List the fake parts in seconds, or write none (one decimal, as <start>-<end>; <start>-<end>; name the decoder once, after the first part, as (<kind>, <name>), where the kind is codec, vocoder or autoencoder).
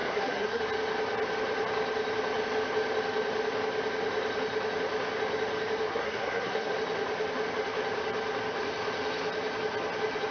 0.0-0.6 (codec, SNAC); 5.9-6.7